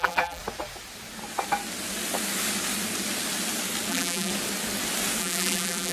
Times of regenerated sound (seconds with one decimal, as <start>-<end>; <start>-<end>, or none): 0.0-0.4; 3.9-4.3; 5.2-5.9